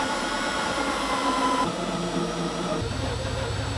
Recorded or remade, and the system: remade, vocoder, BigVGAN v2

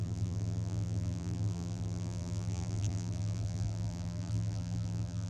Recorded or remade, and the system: remade, vocoder, BigVGAN v2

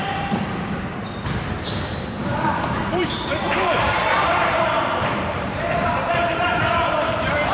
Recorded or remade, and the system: remade, vocoder, BigVGAN v2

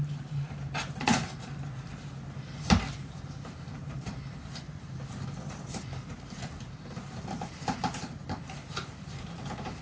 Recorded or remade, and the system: remade, vocoder, BigVGAN v2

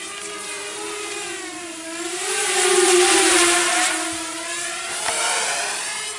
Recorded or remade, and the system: remade, vocoder, BigVGAN v2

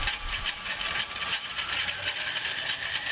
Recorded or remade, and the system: remade, vocoder, BigVGAN v2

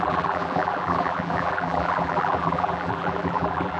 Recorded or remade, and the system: remade, vocoder, BigVGAN v2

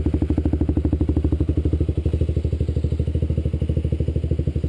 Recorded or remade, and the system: recorded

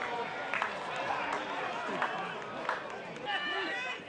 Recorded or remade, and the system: recorded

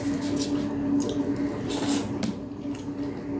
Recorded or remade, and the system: recorded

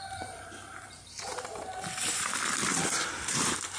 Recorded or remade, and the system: remade, vocoder, BigVGAN v2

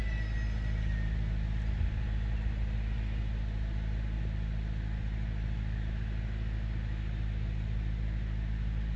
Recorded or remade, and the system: recorded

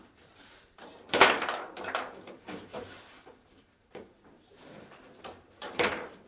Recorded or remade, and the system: remade, vocoder, BigVGAN v2